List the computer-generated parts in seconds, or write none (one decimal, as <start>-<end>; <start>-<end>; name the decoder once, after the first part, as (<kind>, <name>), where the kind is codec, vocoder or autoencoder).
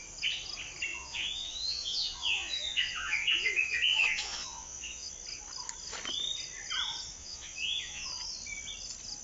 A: 0.9-5.1 (vocoder, Vocos); 7.2-8.1